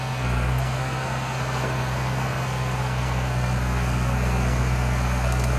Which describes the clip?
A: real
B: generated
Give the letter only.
B